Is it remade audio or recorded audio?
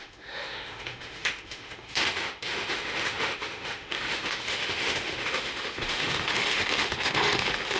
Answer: remade